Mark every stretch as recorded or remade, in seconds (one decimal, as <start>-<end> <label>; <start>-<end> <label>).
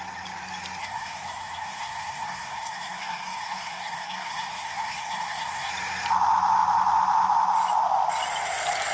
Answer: 0.0-0.8 recorded; 0.8-5.7 remade; 5.7-8.9 recorded